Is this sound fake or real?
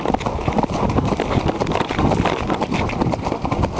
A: real